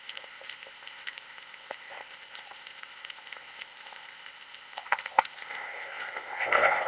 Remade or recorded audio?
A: remade